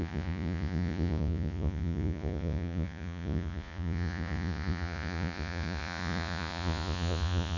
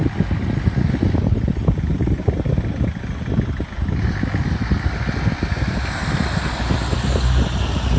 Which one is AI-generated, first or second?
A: first